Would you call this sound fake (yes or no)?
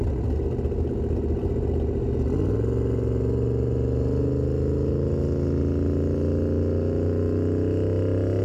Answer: no